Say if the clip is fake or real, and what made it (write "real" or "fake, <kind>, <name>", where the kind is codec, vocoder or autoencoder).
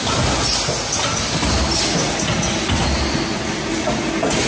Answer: real